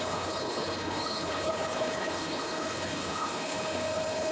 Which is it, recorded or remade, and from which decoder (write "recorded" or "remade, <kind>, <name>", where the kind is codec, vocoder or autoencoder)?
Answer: remade, codec, HILCodec